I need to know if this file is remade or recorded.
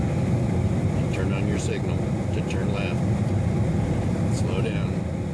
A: recorded